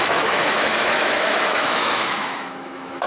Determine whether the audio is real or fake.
fake